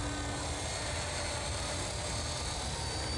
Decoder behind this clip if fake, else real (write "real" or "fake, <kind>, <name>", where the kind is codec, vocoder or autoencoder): real